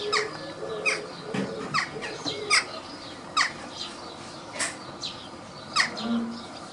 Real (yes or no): yes